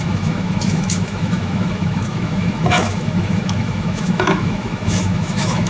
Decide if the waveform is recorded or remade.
remade